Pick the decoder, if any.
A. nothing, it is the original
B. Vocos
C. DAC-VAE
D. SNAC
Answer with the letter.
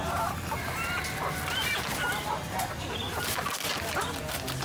A